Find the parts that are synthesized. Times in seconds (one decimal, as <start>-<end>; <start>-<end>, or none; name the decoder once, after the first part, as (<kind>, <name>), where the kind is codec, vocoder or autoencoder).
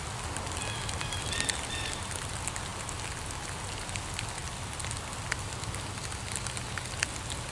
none